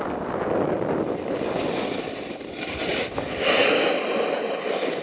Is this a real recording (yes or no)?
yes